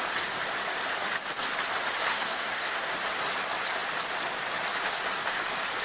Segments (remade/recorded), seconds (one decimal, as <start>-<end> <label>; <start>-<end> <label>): 0.0-2.1 recorded; 2.1-2.9 remade; 2.9-5.8 recorded